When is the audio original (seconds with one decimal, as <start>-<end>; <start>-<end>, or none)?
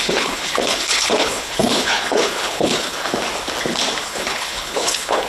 3.1-4.0